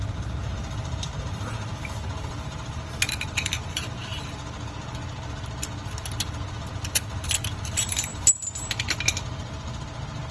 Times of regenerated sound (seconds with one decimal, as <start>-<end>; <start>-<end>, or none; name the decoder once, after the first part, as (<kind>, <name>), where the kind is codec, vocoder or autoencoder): 0.0-4.4 (vocoder, BigVGAN v2); 6.5-8.1